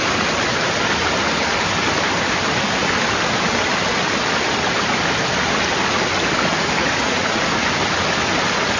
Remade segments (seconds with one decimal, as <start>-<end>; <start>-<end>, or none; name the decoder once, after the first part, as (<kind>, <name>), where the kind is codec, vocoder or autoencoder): 6.8-7.4 (vocoder, Vocos)

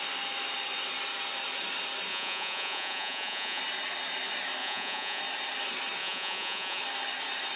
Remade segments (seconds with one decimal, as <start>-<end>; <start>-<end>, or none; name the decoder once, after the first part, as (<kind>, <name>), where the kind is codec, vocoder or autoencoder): 2.1-3.6 (vocoder, Vocos); 4.6-5.2; 6.0-6.8